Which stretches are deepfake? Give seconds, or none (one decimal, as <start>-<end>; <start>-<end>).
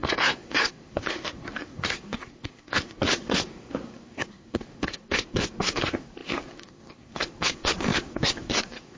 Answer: 0.0-9.0